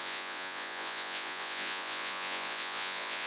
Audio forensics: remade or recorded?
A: remade